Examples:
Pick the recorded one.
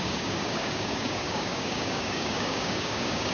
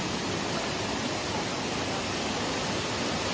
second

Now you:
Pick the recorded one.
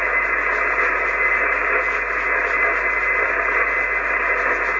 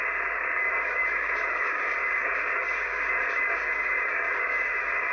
first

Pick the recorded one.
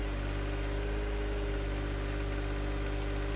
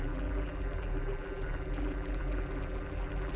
first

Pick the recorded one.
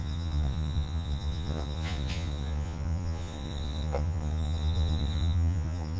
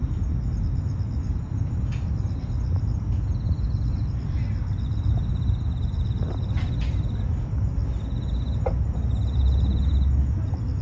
second